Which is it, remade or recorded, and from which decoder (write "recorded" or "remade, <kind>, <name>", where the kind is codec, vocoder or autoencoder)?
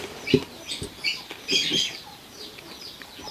recorded